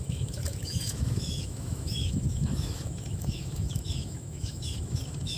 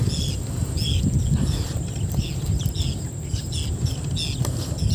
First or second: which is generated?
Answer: first